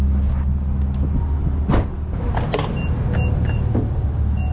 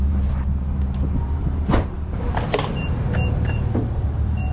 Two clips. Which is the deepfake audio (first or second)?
second